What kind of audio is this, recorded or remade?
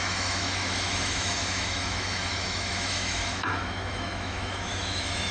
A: remade